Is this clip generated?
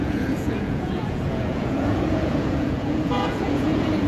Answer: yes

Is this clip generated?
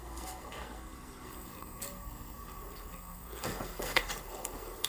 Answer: yes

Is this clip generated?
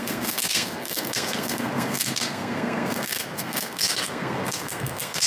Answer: yes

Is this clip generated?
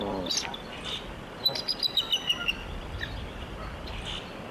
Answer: no